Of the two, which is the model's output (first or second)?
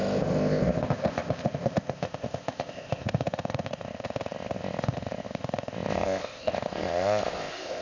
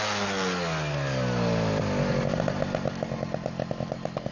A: first